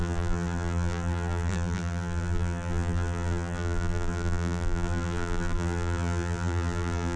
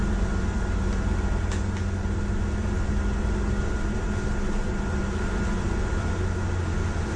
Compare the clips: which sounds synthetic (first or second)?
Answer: first